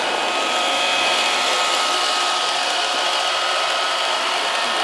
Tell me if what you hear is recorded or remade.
remade